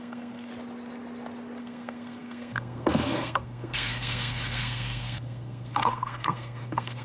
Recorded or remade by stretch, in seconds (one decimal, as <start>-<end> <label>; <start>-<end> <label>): 0.0-0.5 remade; 0.5-1.6 recorded; 1.6-7.0 remade